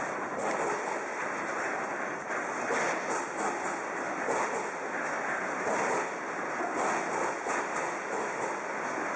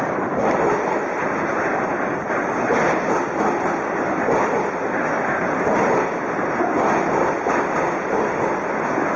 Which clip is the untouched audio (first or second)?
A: first